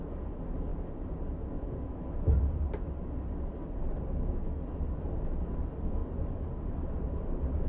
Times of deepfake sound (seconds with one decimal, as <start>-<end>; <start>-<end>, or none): none